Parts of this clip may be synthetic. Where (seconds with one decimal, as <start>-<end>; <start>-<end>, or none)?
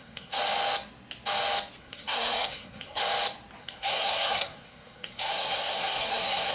0.0-0.4; 1.8-3.0; 3.6-6.5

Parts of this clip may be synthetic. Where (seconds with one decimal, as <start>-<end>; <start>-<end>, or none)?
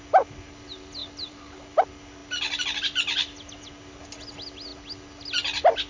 1.0-1.8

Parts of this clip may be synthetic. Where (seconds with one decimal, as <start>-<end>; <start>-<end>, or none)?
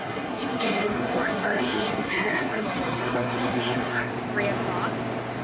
0.0-4.1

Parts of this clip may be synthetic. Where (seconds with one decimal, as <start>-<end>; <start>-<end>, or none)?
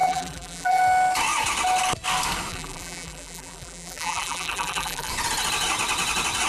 0.0-0.8; 2.5-5.1